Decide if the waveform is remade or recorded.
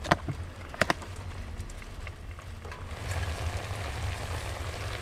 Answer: recorded